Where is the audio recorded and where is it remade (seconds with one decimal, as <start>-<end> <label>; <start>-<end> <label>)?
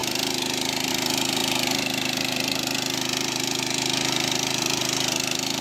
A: 0.0-5.6 recorded